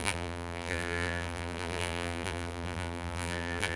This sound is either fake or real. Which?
fake